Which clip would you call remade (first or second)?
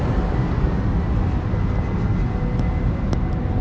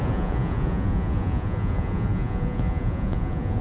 second